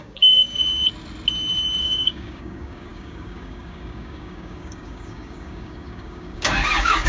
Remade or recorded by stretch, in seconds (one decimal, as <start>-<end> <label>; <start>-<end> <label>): 0.0-0.4 remade; 0.4-1.8 recorded; 1.8-7.1 remade